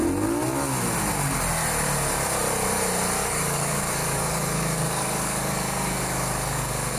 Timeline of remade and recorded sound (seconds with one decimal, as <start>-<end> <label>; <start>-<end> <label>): 0.0-3.2 recorded; 3.2-7.0 remade